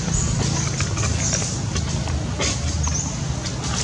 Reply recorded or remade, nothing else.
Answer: recorded